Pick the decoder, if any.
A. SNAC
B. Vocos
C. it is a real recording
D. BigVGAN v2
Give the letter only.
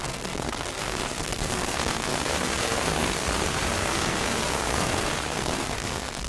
A